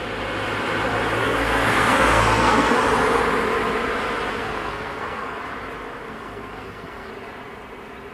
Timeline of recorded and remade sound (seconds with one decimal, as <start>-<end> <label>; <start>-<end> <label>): 0.0-1.2 recorded; 1.2-2.8 remade; 2.8-4.3 recorded; 4.3-5.4 remade; 5.4-6.0 recorded; 6.0-7.1 remade; 7.1-8.1 recorded